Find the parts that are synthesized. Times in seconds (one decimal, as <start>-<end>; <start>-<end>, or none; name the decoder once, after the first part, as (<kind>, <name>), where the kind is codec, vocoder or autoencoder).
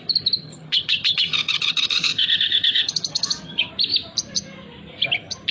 0.4-3.7 (vocoder, HiFi-GAN)